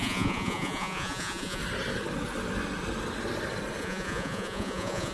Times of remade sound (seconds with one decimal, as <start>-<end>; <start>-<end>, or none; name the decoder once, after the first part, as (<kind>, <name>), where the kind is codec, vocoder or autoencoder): 0.0-1.6 (vocoder, Vocos); 3.8-5.1